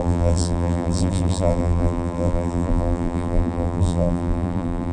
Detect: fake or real fake